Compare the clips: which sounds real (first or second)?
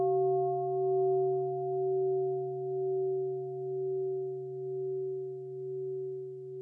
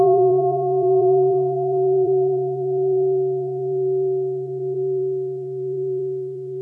first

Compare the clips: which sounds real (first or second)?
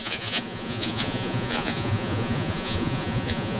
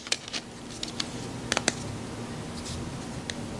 second